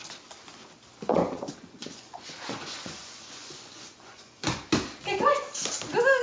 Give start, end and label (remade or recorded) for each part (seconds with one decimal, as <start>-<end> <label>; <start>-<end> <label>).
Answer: 0.0-1.1 recorded; 1.1-4.6 remade; 4.6-6.2 recorded